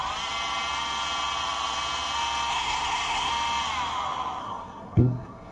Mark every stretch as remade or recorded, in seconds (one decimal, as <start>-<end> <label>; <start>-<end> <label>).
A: 0.0-2.5 recorded; 2.5-3.3 remade; 3.3-4.4 recorded; 4.4-5.5 remade